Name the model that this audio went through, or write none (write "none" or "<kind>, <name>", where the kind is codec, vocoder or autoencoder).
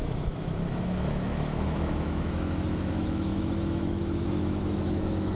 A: autoencoder, DAC-VAE